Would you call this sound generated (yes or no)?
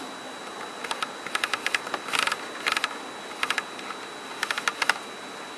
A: no